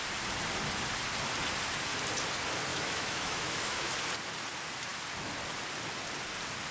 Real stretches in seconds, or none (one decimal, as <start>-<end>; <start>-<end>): 0.0-2.7; 3.9-6.7